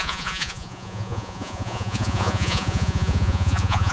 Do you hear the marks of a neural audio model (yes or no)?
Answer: yes